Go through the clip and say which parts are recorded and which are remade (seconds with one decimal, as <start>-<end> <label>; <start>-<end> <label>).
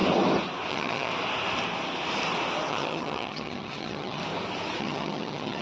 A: 0.0-0.7 recorded; 0.7-1.1 remade; 1.1-2.7 recorded; 2.7-4.2 remade; 4.2-4.8 recorded; 4.8-5.6 remade